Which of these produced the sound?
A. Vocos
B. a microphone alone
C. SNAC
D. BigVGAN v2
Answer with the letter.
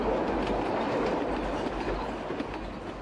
B